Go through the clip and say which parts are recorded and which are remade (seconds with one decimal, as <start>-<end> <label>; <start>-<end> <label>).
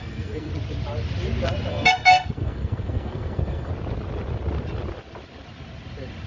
0.0-0.5 remade; 0.5-1.7 recorded; 1.7-3.7 remade; 3.7-6.3 recorded